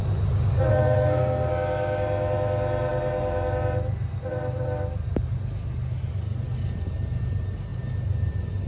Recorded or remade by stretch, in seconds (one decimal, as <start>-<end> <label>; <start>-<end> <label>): 0.0-0.7 recorded; 0.7-1.5 remade; 1.5-8.7 recorded